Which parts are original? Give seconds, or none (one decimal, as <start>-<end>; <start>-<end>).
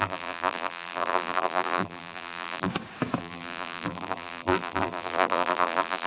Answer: 2.7-3.2